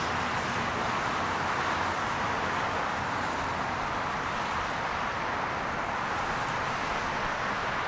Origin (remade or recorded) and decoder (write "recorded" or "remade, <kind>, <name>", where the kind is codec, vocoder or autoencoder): recorded